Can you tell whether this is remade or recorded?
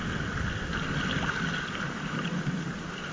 recorded